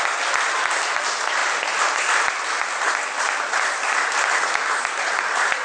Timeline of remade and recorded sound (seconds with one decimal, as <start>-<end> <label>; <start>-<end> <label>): 0.0-5.6 recorded